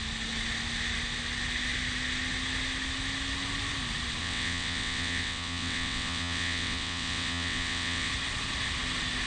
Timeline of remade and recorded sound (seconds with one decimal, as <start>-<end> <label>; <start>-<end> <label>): 0.0-4.2 recorded; 4.2-8.1 remade; 8.1-9.3 recorded